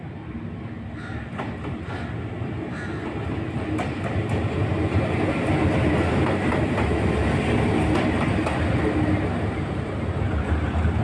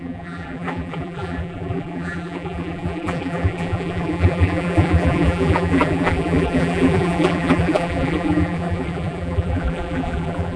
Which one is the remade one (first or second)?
second